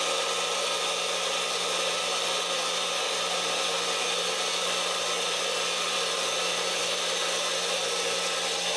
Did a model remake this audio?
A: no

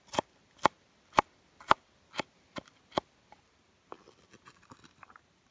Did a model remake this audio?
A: no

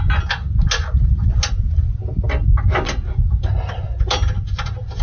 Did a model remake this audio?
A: no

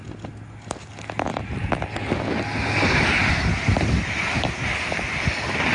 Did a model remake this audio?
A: no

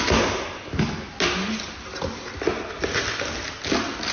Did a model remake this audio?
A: no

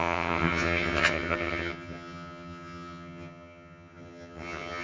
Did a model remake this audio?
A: yes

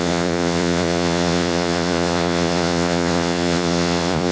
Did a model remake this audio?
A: yes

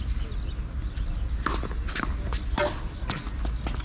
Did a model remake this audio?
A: no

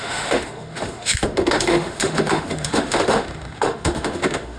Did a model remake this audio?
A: yes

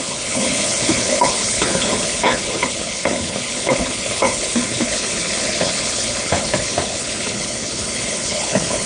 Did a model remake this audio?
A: yes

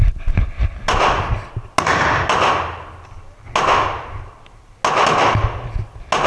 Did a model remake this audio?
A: no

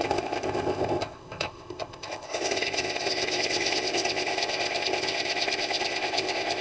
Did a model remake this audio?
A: yes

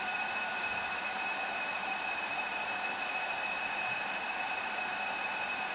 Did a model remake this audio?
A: yes